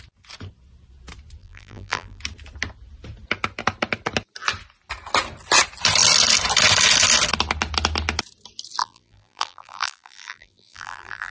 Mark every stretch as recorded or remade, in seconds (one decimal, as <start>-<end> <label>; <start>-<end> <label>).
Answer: 0.0-1.4 recorded; 1.4-2.2 remade; 2.2-8.8 recorded; 8.8-11.3 remade